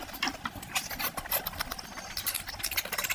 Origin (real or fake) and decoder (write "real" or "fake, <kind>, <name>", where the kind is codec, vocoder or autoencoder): real